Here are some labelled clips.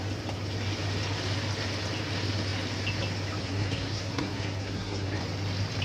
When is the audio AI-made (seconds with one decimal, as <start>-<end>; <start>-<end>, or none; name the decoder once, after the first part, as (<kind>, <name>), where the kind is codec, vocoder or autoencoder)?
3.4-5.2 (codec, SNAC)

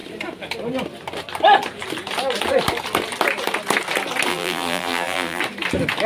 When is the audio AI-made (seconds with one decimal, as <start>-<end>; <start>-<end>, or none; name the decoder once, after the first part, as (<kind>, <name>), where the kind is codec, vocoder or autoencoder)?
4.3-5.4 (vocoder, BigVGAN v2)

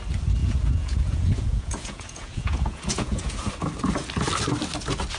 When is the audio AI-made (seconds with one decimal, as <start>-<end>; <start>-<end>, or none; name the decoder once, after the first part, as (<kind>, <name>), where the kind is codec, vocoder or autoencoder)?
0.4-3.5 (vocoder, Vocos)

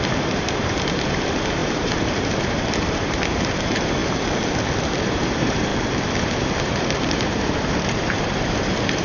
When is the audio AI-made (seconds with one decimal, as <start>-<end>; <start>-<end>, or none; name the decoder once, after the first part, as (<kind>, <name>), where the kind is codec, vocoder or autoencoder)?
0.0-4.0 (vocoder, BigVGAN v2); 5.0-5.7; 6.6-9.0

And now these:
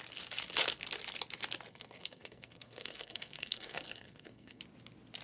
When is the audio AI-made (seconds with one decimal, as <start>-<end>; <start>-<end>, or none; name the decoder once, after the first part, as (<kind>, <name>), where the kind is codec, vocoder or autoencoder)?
1.7-4.6 (codec, SNAC)

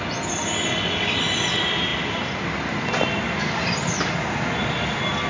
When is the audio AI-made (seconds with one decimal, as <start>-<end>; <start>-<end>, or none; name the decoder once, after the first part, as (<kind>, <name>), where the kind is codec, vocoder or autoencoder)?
none

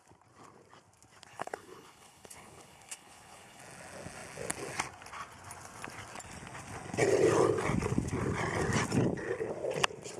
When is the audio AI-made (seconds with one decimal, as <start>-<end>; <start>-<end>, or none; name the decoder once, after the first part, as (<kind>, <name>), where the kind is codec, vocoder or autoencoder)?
1.3-3.6 (codec, HILCodec)

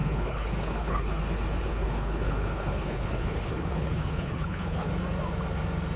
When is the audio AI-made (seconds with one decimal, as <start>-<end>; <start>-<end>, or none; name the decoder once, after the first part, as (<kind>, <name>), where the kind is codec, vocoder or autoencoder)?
0.0-1.2 (codec, HILCodec); 1.7-4.9